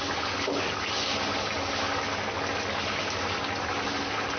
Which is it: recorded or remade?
recorded